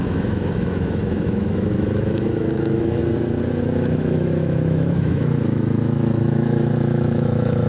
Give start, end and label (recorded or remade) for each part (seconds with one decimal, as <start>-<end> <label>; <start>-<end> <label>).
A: 0.0-3.0 remade; 3.0-3.6 recorded; 3.6-7.7 remade

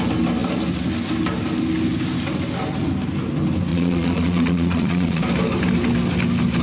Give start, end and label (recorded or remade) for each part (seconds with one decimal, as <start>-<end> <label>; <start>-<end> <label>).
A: 0.0-3.7 recorded; 3.7-5.2 remade; 5.2-6.6 recorded